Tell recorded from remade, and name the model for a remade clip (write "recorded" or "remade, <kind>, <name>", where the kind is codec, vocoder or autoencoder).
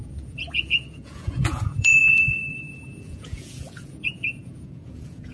remade, vocoder, Vocos